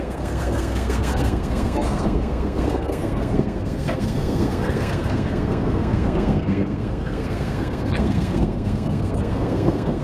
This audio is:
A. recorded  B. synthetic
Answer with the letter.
B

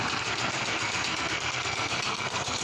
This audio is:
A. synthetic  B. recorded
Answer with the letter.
A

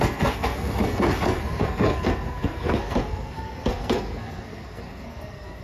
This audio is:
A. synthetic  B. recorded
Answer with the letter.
A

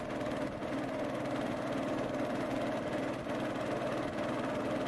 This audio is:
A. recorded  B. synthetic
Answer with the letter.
A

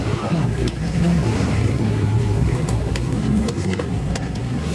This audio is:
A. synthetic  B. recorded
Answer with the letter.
A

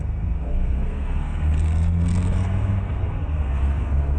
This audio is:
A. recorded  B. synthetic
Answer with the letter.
B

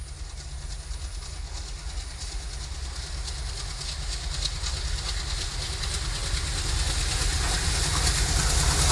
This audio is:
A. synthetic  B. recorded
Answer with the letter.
B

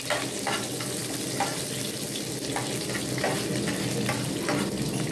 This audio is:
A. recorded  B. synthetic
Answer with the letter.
A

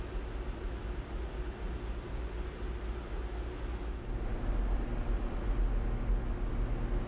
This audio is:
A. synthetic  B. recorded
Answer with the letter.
B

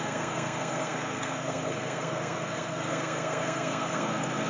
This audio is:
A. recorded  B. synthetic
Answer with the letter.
B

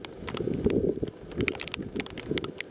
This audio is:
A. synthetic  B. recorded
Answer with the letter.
B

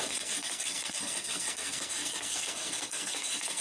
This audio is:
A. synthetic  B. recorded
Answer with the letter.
A